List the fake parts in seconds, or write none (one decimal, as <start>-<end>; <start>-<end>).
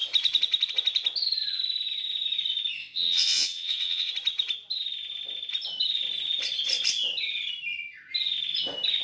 2.8-4.1